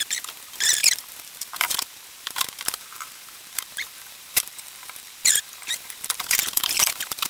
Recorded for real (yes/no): no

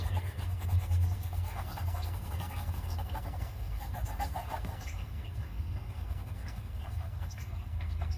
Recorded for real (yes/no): no